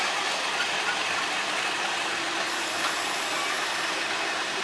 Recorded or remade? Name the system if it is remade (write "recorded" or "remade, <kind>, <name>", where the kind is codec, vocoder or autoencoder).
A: recorded